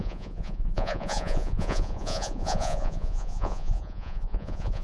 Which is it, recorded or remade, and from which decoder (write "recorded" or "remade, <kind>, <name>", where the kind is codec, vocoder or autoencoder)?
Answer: remade, vocoder, Vocos